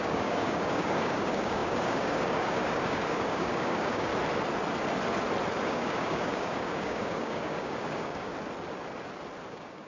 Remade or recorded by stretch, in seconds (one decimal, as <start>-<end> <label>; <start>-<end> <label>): 0.0-4.1 remade; 4.1-5.6 recorded; 5.6-8.3 remade; 8.3-9.5 recorded; 9.5-9.9 remade